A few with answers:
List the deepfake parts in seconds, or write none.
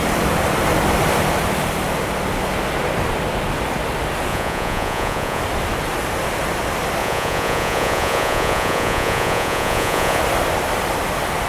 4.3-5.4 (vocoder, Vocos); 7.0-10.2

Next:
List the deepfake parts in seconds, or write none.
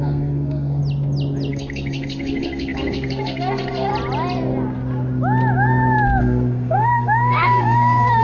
0.0-0.8 (codec, SNAC); 1.5-3.9; 6.2-8.2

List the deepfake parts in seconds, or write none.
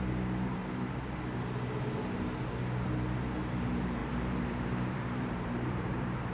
0.0-0.6 (vocoder, BigVGAN v2); 3.4-6.3